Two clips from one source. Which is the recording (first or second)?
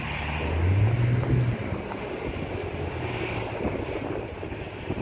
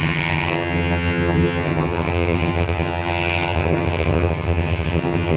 first